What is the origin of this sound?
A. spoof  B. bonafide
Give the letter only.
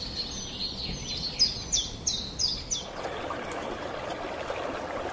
B